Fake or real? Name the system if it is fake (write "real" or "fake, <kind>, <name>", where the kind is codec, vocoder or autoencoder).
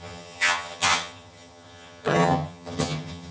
fake, vocoder, HiFi-GAN